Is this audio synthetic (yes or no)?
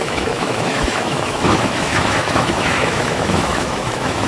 yes